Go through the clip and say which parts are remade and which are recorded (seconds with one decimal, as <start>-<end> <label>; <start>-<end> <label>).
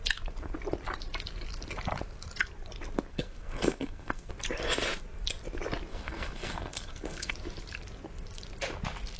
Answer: 0.0-3.1 recorded; 3.1-4.3 remade; 4.3-5.9 recorded; 5.9-7.3 remade; 7.3-9.2 recorded